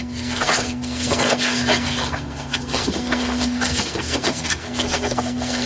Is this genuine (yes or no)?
no